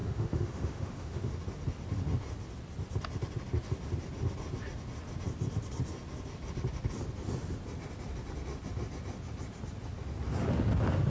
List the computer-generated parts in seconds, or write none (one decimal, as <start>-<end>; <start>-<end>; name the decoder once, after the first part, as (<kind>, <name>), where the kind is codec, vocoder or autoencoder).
0.0-1.3 (autoencoder, DAC-VAE)